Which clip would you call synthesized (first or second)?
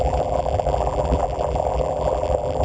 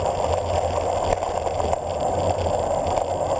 first